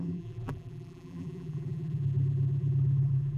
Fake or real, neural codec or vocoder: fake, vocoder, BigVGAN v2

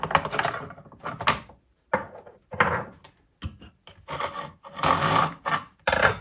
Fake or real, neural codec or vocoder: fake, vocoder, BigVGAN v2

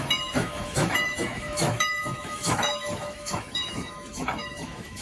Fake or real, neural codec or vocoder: fake, autoencoder, DAC-VAE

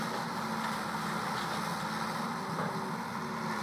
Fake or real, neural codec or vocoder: real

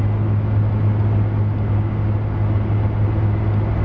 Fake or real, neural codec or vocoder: real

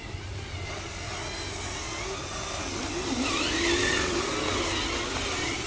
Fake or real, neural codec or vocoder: real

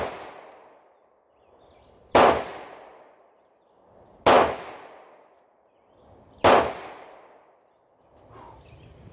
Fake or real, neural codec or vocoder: real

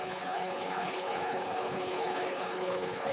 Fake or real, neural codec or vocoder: fake, codec, HILCodec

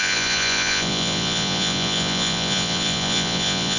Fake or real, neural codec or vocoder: fake, vocoder, Vocos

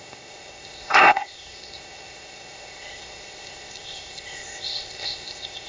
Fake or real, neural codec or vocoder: fake, codec, ZipCodec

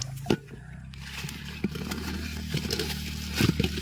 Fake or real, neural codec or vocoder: real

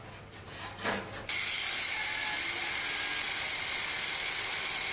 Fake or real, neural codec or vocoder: real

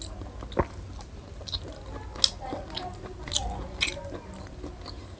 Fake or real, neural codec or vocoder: real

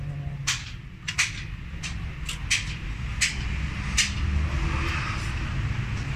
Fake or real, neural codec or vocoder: real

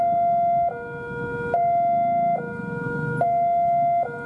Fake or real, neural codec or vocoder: real